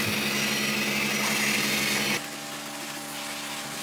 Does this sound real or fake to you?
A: real